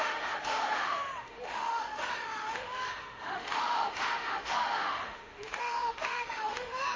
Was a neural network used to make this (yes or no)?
yes